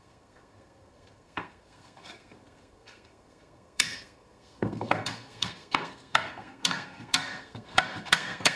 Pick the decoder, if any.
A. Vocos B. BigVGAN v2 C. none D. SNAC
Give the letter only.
D